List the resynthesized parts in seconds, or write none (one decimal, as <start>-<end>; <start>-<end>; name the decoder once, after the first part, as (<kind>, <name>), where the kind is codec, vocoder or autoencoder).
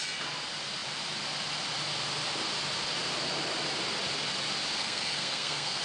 4.8-5.8 (codec, SNAC)